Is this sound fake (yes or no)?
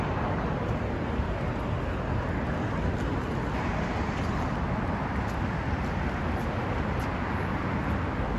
no